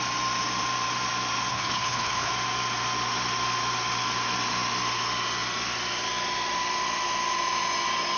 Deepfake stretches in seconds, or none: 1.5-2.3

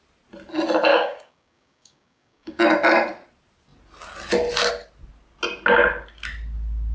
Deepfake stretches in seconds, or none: 0.9-2.6

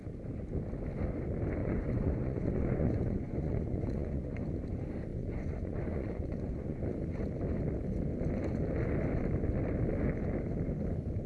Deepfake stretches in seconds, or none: 1.6-4.4; 5.1-6.8

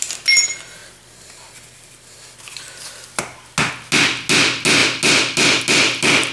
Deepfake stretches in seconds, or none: none

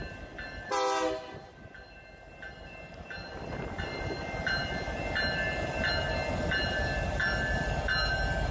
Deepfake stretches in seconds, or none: none

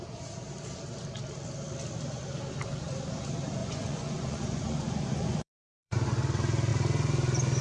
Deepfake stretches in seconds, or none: 3.6-6.2

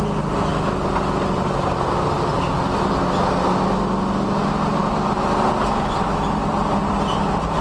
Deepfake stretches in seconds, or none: none